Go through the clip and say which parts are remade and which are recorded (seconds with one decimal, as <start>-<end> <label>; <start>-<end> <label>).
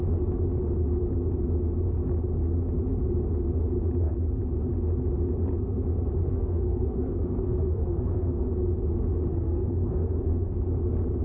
0.0-6.2 recorded; 6.2-8.6 remade; 8.6-9.3 recorded; 9.3-10.6 remade; 10.6-11.2 recorded